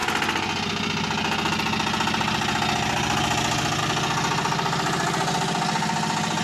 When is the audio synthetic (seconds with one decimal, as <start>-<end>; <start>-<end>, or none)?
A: none